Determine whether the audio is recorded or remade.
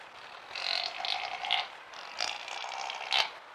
recorded